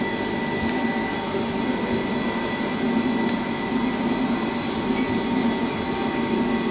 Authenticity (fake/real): real